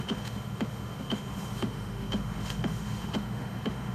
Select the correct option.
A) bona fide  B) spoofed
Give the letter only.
B